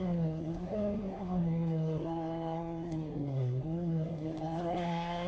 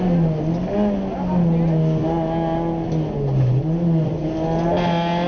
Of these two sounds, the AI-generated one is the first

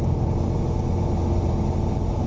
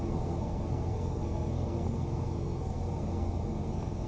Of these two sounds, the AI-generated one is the second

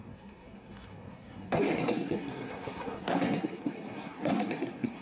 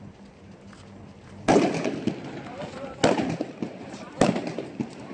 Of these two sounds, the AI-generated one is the first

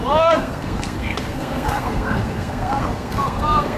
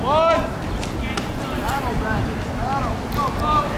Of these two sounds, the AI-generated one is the first